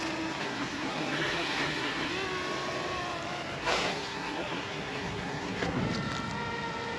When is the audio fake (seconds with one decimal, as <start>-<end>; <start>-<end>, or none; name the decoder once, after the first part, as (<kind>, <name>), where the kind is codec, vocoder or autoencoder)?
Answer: 0.4-2.1 (codec, SNAC); 3.6-5.8